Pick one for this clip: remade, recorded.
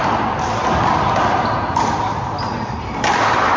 recorded